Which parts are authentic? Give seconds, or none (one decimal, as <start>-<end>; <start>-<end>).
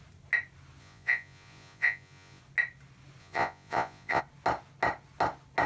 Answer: 0.0-0.8; 2.4-3.2; 4.2-5.7